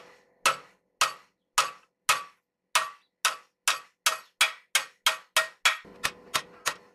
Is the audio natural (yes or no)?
yes